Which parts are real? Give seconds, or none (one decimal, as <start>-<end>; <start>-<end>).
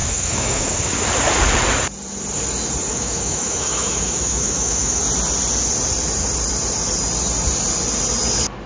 0.8-2.9; 5.0-8.7